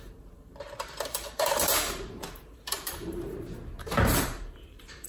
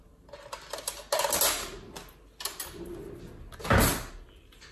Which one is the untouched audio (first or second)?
second